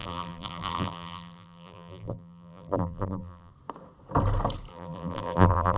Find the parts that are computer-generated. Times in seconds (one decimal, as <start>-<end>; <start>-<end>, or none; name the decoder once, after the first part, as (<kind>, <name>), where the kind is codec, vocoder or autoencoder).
0.0-3.5 (vocoder, BigVGAN v2); 4.7-5.8